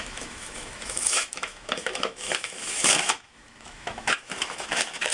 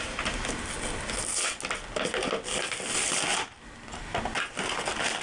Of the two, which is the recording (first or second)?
second